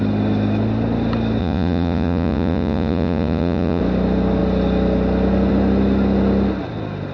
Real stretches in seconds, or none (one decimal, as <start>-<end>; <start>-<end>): 0.0-1.4; 3.8-7.1